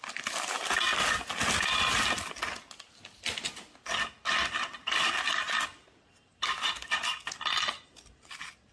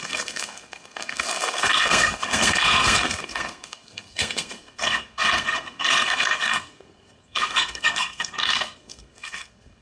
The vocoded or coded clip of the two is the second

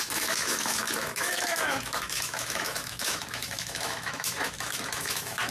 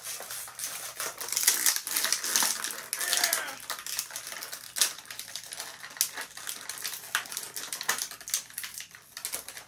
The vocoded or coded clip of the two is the first